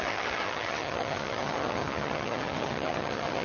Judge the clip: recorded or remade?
remade